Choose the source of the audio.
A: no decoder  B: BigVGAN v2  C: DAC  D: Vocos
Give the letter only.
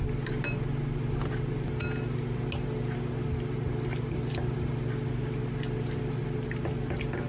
A